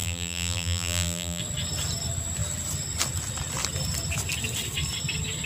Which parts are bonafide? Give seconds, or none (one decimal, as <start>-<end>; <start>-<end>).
1.4-5.5